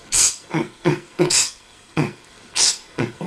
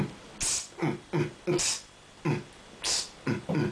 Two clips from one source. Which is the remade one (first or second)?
first